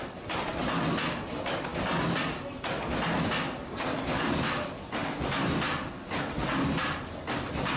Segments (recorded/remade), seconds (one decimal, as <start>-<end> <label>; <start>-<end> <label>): 0.0-7.8 recorded